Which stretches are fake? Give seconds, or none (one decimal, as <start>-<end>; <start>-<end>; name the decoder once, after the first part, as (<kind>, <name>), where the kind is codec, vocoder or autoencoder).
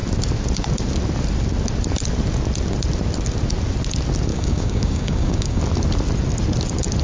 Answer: 4.3-5.6 (codec, DAC)